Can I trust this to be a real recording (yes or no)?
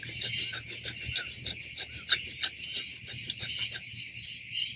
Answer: yes